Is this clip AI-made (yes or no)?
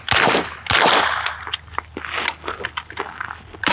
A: no